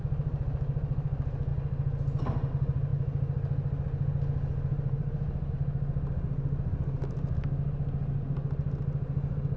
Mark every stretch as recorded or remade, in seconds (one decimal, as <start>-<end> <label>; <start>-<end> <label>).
0.0-9.6 recorded